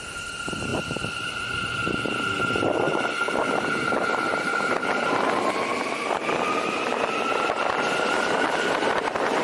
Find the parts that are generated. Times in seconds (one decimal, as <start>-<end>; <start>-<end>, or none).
none